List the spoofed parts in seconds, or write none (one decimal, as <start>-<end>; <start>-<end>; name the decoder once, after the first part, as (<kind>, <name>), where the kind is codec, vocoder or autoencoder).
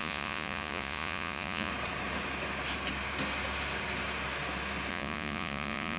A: 0.0-1.7 (vocoder, Vocos); 4.9-6.0